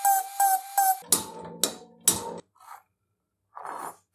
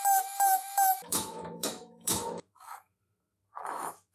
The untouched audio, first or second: first